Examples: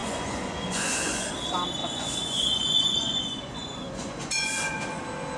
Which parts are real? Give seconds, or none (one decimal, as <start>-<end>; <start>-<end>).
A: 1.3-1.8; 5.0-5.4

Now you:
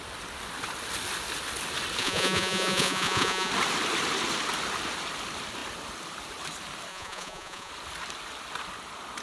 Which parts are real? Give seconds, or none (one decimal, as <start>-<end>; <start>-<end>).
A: 0.0-2.0; 3.5-6.9; 7.7-9.2

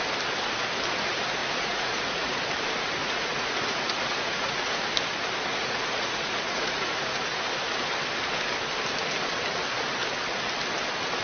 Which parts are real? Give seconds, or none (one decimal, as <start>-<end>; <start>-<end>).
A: 0.0-1.4; 2.4-3.0; 4.8-5.5; 7.5-11.2